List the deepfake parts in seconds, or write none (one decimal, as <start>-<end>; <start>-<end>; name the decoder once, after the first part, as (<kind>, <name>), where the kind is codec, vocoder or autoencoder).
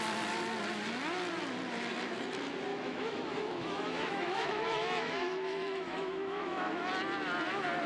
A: 2.7-6.9 (autoencoder, DAC-VAE)